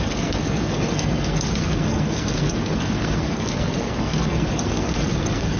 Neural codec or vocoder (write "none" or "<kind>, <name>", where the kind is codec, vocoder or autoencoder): codec, SNAC